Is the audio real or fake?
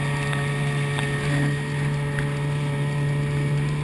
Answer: real